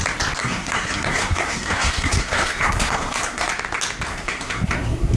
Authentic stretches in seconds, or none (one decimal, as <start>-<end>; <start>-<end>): 0.0-0.4; 3.5-4.1